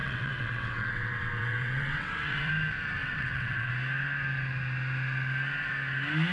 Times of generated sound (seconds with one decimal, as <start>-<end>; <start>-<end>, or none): 0.0-2.5; 3.0-3.7